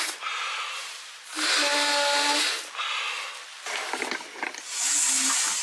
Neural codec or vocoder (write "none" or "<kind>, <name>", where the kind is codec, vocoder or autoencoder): none